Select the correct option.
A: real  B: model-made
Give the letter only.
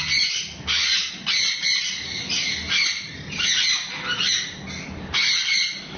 A